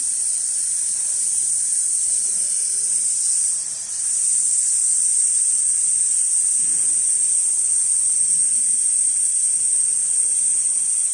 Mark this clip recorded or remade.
remade